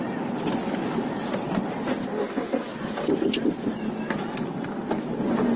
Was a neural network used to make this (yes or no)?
no